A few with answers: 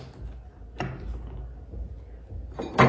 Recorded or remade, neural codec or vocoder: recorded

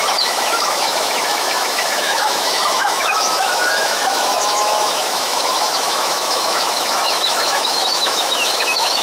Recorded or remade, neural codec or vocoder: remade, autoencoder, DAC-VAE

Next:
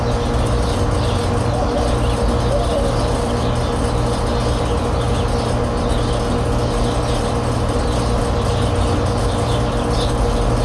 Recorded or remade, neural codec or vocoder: recorded